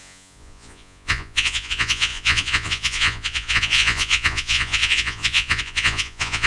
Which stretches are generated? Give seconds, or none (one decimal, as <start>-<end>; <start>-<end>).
0.0-6.5